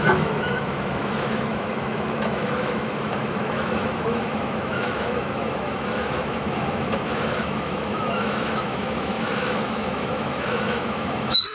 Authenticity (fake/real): fake